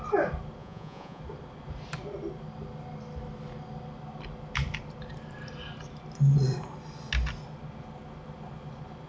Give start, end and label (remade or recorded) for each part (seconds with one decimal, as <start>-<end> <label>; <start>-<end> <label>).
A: 0.0-0.6 recorded; 0.6-1.2 remade; 1.2-9.1 recorded